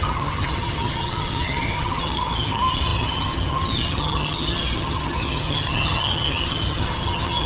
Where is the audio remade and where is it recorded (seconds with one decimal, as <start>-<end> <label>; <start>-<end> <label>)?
0.0-7.5 remade